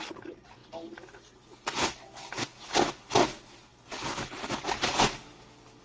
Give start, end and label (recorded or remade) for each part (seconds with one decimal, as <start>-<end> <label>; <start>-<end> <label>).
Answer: 0.0-5.8 recorded